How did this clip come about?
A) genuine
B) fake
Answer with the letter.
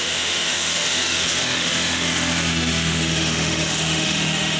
B